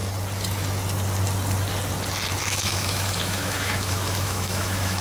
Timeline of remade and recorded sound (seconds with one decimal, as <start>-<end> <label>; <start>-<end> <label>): 0.0-2.3 recorded; 2.3-5.0 remade